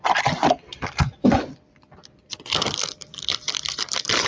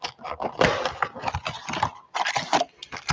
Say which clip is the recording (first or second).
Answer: second